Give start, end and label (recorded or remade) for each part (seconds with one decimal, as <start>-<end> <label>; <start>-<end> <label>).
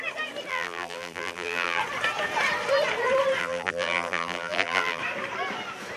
0.0-0.5 recorded; 0.5-1.8 remade; 1.8-3.4 recorded; 3.4-5.0 remade; 5.0-6.0 recorded